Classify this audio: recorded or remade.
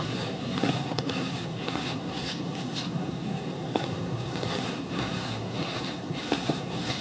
remade